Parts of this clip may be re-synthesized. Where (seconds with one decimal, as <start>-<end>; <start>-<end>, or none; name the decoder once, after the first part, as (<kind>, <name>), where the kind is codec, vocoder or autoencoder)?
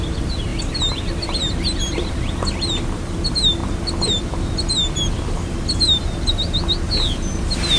none